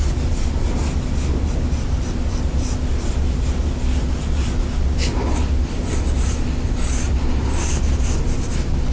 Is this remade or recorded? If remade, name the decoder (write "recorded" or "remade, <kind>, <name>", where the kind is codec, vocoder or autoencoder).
recorded